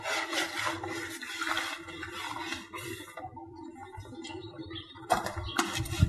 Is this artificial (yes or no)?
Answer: no